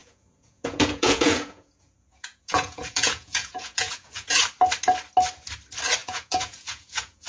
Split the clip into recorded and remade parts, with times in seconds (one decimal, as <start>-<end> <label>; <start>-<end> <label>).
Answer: 0.0-4.4 remade; 4.4-6.0 recorded; 6.0-7.3 remade